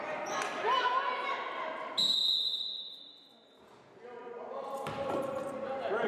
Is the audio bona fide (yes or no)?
yes